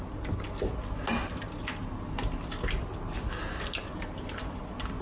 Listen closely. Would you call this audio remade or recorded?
recorded